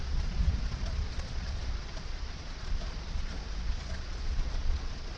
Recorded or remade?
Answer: remade